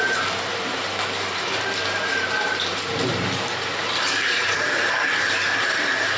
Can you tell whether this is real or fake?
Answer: fake